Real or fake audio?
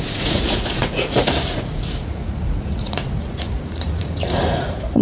fake